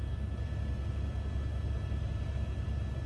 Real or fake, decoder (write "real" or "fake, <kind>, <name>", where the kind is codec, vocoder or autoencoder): real